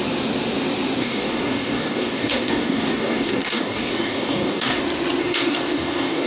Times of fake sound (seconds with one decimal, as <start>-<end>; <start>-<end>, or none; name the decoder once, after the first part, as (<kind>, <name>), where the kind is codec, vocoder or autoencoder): 1.0-4.8 (codec, DAC); 5.2-6.3